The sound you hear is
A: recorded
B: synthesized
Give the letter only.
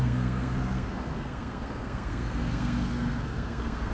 B